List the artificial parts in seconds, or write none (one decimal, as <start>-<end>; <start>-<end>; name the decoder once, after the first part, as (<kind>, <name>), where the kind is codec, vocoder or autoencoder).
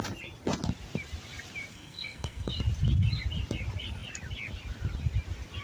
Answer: 1.7-2.5 (codec, SNAC)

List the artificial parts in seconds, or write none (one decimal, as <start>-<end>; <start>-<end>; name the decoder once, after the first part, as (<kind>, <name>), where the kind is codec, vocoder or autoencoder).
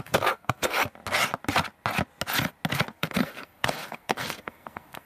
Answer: 0.0-0.8 (codec, SNAC); 2.7-5.1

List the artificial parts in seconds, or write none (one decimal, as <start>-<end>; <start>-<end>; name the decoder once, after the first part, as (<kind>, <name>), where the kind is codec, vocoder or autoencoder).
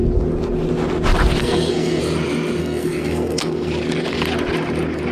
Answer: 1.4-2.0 (codec, SNAC); 2.6-3.7